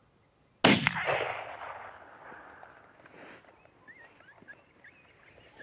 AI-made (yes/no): no